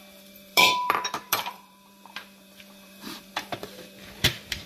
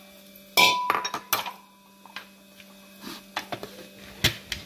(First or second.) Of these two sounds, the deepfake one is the first